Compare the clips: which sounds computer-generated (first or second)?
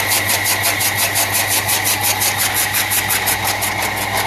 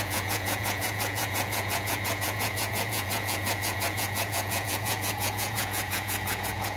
second